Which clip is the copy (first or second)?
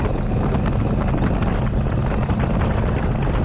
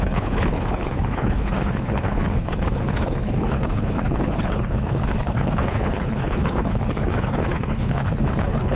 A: second